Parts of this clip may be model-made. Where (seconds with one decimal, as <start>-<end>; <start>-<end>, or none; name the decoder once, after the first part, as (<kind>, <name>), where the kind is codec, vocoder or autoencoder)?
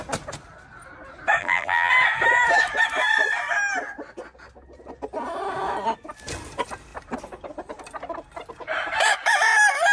1.4-1.9 (vocoder, BigVGAN v2)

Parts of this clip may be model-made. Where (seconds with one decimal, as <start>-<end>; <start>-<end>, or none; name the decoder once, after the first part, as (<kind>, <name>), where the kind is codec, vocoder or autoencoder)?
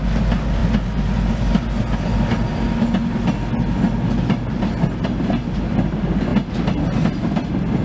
none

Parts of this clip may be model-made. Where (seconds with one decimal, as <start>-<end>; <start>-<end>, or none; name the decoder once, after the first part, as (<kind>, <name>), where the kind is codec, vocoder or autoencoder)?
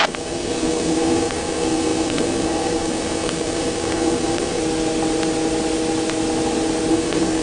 0.0-4.6 (codec, SNAC); 6.9-7.4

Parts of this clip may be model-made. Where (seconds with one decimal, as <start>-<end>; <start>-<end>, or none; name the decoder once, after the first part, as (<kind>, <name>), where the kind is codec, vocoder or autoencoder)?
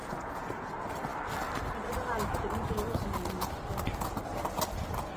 0.0-0.7 (vocoder, Vocos)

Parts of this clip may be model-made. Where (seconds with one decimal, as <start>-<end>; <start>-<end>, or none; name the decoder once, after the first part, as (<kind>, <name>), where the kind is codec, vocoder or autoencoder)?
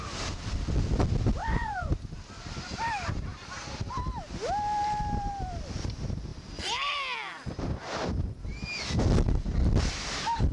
1.4-1.9 (vocoder, Vocos)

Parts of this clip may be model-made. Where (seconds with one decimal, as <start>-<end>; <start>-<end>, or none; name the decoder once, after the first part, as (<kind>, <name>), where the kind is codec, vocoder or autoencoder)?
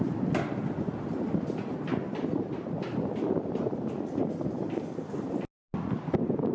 none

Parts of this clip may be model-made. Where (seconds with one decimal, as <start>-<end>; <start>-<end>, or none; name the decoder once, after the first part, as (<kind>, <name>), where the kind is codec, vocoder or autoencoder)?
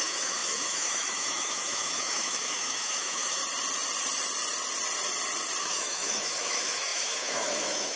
0.0-3.4 (autoencoder, DAC-VAE); 5.6-8.0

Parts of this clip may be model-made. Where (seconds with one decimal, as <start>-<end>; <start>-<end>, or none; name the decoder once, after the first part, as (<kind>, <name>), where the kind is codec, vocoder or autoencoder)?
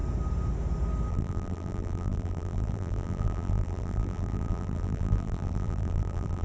1.1-6.4 (vocoder, BigVGAN v2)